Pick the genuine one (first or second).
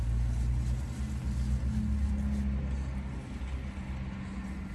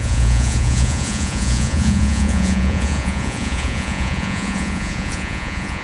first